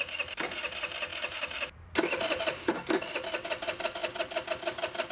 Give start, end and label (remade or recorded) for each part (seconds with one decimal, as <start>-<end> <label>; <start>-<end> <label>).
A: 0.0-5.1 recorded